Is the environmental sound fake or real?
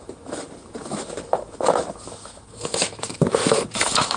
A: fake